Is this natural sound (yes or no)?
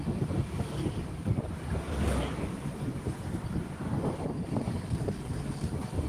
yes